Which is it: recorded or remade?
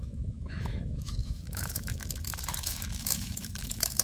remade